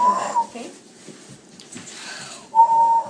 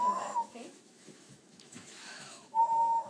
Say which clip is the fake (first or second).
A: second